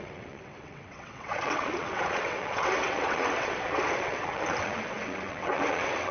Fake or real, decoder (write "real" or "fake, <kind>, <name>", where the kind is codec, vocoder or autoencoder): fake, vocoder, WaveNeXt